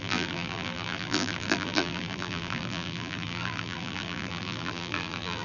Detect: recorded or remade remade